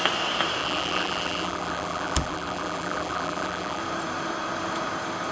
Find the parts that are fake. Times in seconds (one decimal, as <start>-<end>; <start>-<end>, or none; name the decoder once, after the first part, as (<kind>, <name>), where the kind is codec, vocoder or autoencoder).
0.6-3.8 (vocoder, BigVGAN v2)